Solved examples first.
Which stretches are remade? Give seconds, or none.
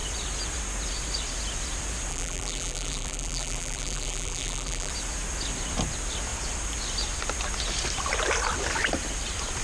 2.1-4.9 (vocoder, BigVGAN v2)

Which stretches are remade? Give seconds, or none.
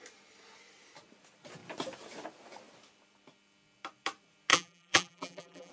4.5-5.7 (vocoder, BigVGAN v2)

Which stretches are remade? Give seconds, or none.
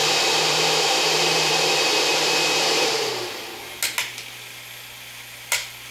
0.0-3.4 (vocoder, BigVGAN v2)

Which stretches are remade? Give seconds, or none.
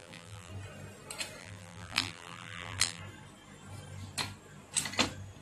0.0-0.5 (vocoder, BigVGAN v2); 1.4-3.0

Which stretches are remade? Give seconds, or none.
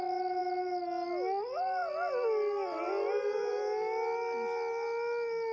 none